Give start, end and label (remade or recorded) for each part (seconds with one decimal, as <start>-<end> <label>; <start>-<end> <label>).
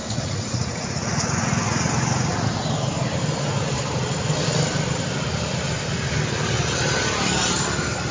0.0-2.5 remade; 2.5-8.1 recorded